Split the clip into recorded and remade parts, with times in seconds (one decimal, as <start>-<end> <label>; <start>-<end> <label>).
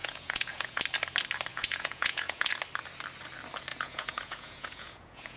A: 0.0-0.8 remade; 0.8-1.5 recorded; 1.5-2.5 remade; 2.5-3.7 recorded; 3.7-5.4 remade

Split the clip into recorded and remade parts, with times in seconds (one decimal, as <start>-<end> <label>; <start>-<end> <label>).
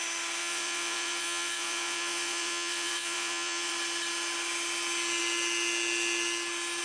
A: 0.0-0.4 recorded; 0.4-3.7 remade; 3.7-6.8 recorded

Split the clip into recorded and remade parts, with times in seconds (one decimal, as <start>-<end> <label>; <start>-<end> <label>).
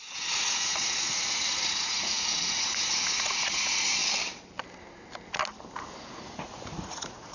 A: 0.0-4.0 remade; 4.0-6.0 recorded; 6.0-7.3 remade